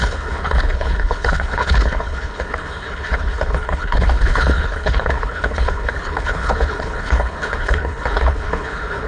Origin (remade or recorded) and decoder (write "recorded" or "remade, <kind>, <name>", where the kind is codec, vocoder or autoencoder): remade, codec, HILCodec